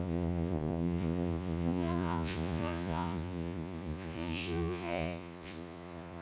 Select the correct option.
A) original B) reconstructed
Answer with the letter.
B